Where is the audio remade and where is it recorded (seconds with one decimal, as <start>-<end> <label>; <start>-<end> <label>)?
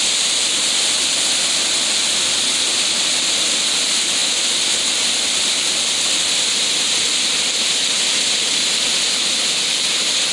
0.0-10.3 recorded